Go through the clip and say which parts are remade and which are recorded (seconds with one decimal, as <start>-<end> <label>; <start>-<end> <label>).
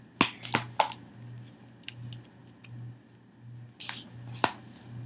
0.0-5.1 recorded